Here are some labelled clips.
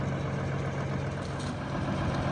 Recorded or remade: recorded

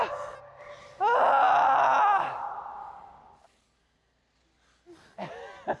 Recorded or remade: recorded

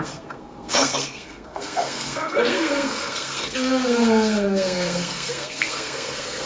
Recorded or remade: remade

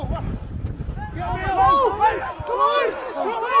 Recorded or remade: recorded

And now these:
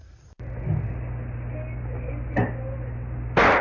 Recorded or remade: recorded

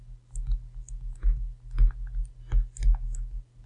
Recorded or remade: recorded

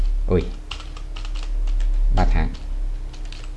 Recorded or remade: recorded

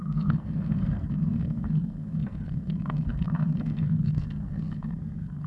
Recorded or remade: remade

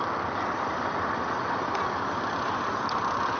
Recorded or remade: recorded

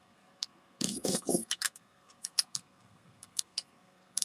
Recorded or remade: remade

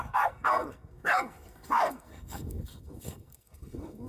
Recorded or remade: remade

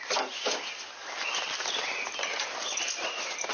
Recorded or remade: recorded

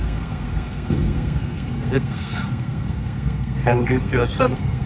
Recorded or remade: remade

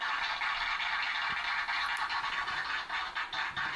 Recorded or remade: recorded